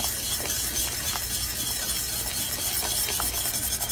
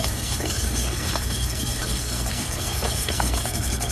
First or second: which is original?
first